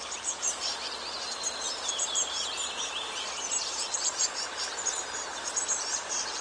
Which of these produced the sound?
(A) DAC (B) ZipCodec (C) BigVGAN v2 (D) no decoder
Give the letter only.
C